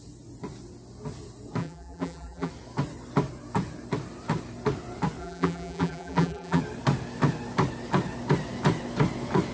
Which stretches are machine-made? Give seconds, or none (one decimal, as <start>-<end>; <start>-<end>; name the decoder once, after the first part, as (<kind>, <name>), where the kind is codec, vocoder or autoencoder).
1.6-2.5 (vocoder, BigVGAN v2); 5.2-6.6